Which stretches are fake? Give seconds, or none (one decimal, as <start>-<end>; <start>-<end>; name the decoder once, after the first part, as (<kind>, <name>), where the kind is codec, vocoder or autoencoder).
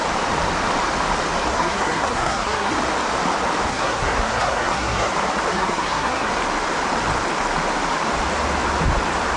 1.5-2.7 (codec, SNAC); 3.7-5.1; 5.5-6.3